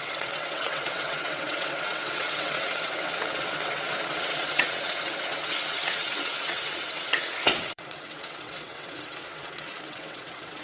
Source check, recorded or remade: remade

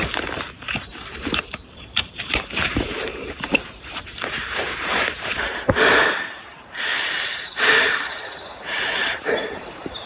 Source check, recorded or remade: remade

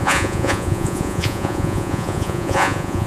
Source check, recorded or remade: remade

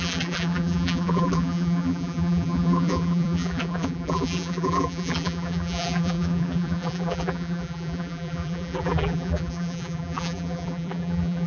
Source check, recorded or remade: remade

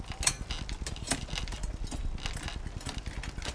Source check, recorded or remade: recorded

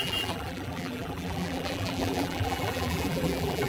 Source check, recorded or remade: remade